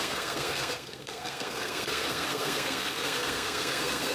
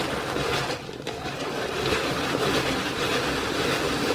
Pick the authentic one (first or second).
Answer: second